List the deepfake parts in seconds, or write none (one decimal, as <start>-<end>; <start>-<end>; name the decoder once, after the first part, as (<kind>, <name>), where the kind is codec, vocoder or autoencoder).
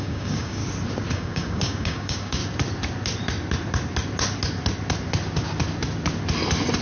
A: 0.0-0.6 (codec, DAC); 1.1-2.4